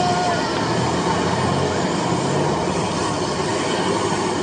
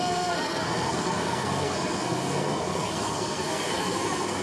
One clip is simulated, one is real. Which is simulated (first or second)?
second